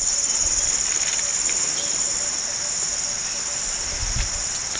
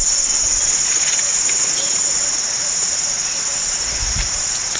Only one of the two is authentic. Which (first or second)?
first